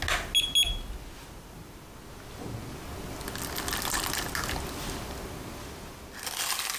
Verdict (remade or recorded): recorded